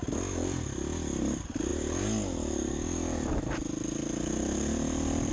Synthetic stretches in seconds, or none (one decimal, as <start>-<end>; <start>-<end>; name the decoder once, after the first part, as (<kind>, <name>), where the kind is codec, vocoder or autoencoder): none